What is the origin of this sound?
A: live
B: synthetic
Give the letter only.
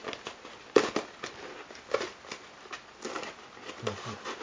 A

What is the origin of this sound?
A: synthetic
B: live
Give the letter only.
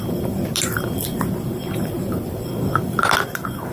A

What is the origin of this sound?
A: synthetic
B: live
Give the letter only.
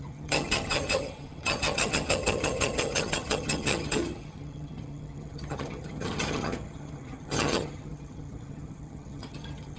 A